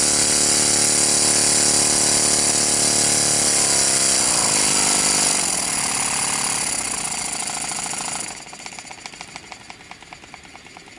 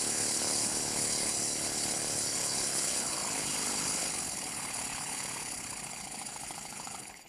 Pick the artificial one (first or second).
second